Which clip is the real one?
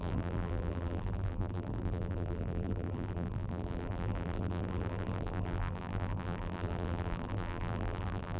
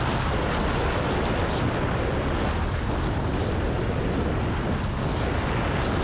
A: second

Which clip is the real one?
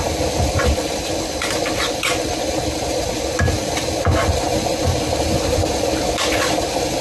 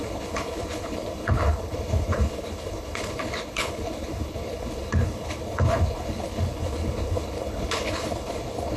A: first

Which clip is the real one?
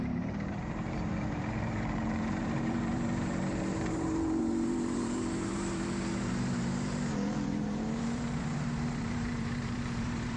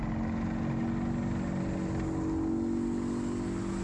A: second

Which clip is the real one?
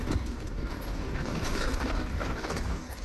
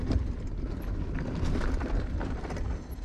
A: second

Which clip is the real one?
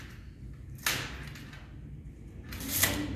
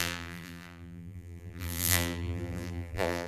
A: first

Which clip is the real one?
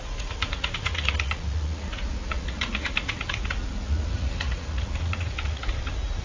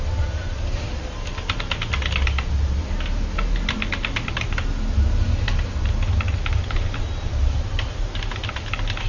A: second